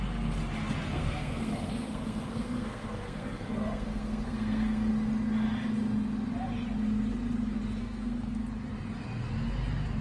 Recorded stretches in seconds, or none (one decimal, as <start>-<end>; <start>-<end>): 0.0-0.9; 4.9-7.8; 8.4-10.0

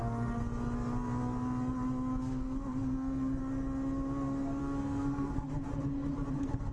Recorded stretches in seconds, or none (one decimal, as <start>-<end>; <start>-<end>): 0.4-2.2; 3.4-4.6; 5.7-6.3

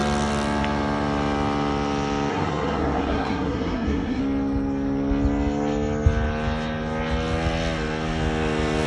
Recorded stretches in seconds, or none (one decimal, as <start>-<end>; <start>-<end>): 0.0-2.3; 4.2-8.9

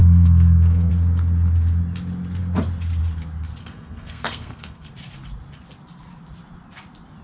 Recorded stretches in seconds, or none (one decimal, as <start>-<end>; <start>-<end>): 0.9-3.6; 4.9-7.2

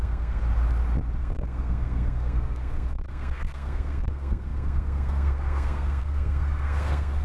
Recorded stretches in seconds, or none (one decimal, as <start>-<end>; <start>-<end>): 0.4-1.2

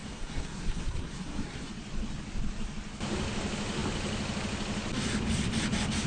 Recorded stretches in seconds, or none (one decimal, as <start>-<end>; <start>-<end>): 1.7-6.1